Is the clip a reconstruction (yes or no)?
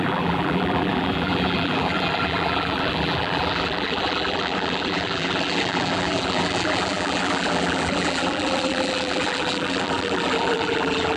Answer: yes